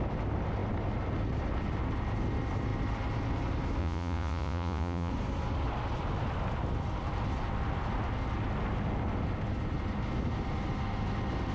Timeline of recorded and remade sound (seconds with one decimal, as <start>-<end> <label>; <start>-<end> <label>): 0.0-3.8 recorded; 3.8-5.1 remade; 5.1-11.5 recorded